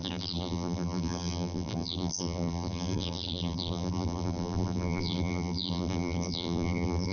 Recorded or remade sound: remade